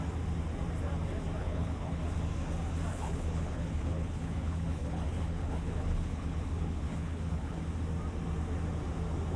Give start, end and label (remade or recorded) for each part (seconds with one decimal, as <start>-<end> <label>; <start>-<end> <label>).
0.0-1.4 recorded; 1.4-2.0 remade; 2.0-2.9 recorded; 2.9-7.6 remade; 7.6-9.4 recorded